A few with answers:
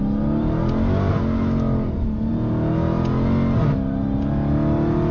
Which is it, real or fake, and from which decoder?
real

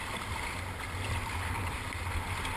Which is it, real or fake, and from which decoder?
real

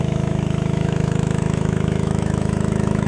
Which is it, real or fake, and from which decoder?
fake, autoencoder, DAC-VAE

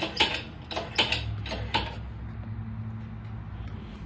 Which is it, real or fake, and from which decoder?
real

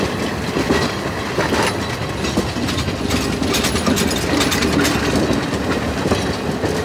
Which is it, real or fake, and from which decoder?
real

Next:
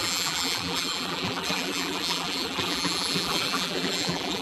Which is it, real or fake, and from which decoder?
fake, vocoder, BigVGAN v2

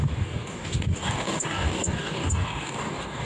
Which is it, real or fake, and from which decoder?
fake, codec, DAC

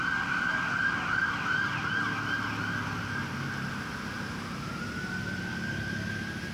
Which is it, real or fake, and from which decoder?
real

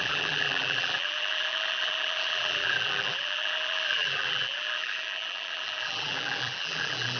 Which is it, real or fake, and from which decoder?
fake, vocoder, BigVGAN v2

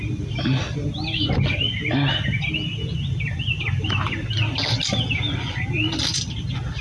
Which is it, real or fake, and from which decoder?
real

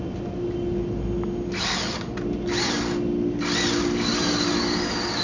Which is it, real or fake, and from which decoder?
real